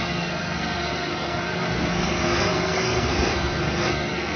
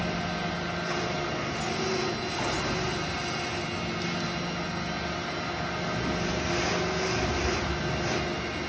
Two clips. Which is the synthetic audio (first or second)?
first